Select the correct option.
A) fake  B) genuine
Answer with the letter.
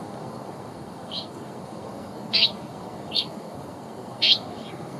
A